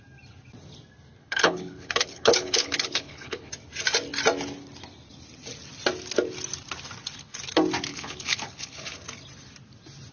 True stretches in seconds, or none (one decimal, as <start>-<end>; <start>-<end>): 0.0-1.2; 3.5-7.9; 8.9-10.1